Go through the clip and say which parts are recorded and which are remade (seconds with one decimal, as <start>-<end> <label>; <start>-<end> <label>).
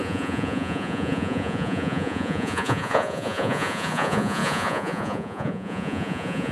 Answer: 0.0-6.5 remade